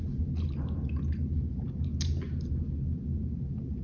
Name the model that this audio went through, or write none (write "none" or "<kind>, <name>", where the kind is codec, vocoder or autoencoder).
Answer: none